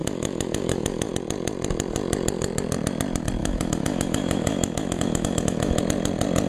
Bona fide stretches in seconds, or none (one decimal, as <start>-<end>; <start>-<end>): 1.1-3.4; 5.8-6.5